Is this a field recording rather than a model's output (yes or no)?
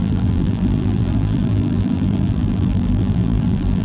no